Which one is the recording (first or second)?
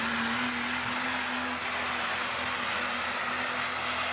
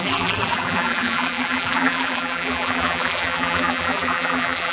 first